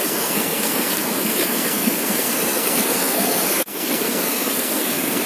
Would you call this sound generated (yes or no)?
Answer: yes